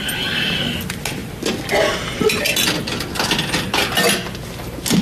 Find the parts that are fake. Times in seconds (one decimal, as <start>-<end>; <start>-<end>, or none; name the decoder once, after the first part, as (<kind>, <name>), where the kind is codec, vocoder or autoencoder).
none